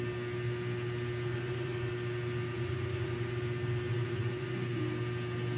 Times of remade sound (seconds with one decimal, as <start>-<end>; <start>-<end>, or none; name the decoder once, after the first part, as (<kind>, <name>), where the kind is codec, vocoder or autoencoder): 1.3-1.9 (vocoder, Vocos); 2.5-3.4; 3.9-4.8

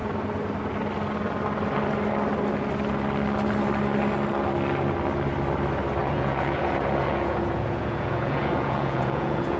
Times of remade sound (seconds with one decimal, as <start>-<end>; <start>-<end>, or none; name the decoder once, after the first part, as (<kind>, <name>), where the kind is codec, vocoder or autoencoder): 6.0-9.6 (vocoder, Vocos)

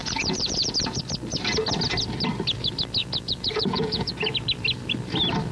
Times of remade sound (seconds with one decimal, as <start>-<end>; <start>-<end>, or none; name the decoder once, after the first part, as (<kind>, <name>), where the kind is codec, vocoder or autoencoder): 0.0-1.0 (vocoder, Vocos); 3.0-4.1

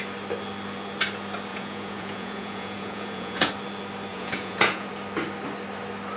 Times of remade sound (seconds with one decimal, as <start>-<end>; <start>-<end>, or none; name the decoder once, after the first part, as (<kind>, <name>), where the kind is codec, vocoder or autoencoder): 1.5-3.5 (vocoder, Vocos); 4.1-4.9

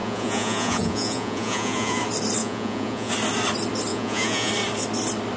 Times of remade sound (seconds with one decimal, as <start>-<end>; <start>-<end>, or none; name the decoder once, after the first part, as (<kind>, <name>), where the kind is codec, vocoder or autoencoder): 0.0-2.0 (vocoder, Vocos); 2.4-3.1; 3.9-4.5

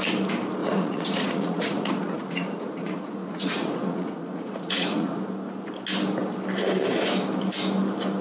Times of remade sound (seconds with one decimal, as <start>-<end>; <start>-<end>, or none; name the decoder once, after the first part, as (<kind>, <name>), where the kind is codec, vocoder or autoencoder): 0.6-5.2 (vocoder, Vocos)

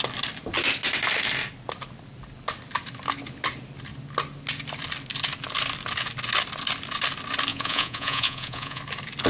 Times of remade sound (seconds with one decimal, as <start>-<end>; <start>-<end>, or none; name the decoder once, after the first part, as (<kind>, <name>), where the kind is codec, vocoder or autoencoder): 7.5-8.8 (vocoder, Vocos)